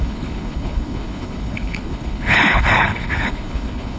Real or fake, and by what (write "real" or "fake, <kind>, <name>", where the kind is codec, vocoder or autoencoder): fake, codec, HILCodec